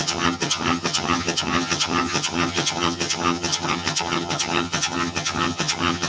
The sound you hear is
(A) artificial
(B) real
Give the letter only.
A